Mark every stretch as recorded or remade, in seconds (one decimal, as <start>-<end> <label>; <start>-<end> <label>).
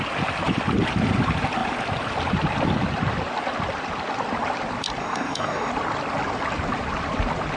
0.0-5.0 recorded; 5.0-5.7 remade; 5.7-7.6 recorded